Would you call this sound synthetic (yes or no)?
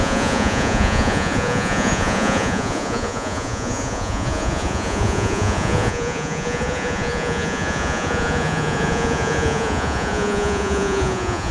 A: yes